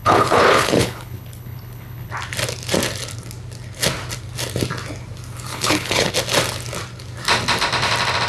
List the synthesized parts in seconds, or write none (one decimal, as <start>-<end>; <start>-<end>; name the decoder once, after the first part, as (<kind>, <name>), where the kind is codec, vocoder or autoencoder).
0.0-2.1 (codec, HILCodec); 5.5-6.1